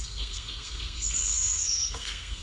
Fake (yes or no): yes